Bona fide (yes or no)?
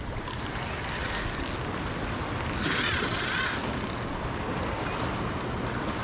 yes